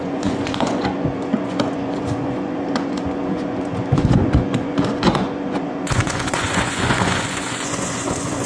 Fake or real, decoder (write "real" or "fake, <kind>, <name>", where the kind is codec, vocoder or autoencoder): fake, vocoder, Vocos